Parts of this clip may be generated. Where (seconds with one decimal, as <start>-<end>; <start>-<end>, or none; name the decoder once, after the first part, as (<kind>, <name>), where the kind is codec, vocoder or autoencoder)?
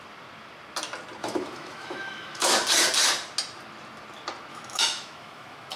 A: 1.2-2.5 (autoencoder, DAC-VAE); 4.5-5.8